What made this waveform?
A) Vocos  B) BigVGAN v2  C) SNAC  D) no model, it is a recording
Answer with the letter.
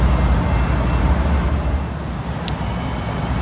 D